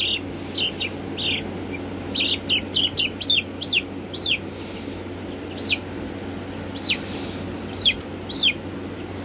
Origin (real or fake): real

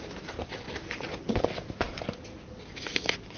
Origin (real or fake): real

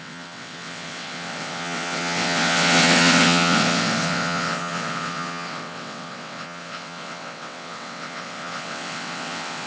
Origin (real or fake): fake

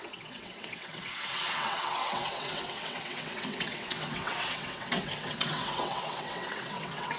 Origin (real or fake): fake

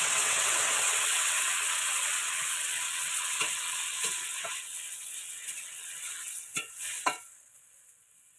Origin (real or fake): fake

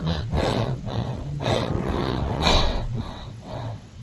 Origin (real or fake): fake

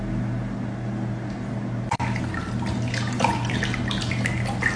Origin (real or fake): real